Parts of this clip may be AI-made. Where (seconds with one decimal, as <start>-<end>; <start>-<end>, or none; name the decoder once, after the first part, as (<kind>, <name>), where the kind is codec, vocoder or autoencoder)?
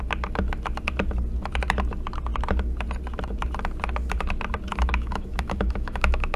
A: 4.7-6.4 (autoencoder, DAC-VAE)